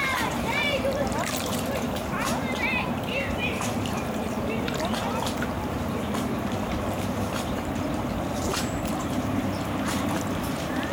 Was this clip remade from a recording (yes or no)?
yes